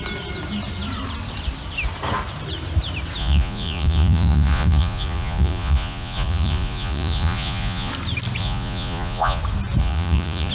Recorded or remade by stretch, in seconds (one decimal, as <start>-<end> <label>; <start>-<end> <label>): 0.0-3.2 recorded; 3.2-7.9 remade; 7.9-8.4 recorded; 8.4-9.4 remade; 9.4-9.8 recorded; 9.8-10.5 remade